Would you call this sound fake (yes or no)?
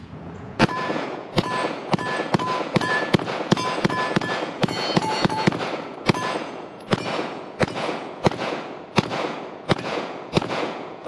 yes